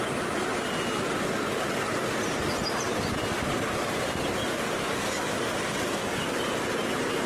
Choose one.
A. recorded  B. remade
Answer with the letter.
A